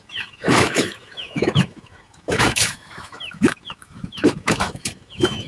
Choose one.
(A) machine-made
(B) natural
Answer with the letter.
A